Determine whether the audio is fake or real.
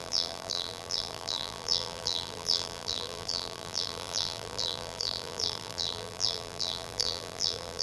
fake